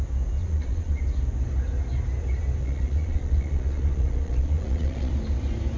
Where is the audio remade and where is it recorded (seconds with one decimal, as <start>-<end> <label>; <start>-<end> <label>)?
0.0-0.4 recorded; 0.4-1.0 remade; 1.0-2.6 recorded; 2.6-5.1 remade; 5.1-5.8 recorded